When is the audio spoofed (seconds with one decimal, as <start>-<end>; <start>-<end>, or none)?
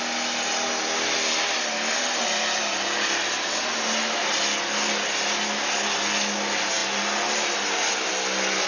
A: none